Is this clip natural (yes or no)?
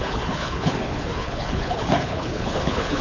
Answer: no